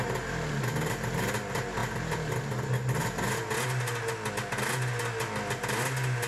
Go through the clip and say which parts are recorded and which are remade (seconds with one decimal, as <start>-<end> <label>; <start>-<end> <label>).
0.0-6.3 recorded